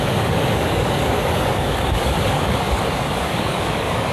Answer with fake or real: fake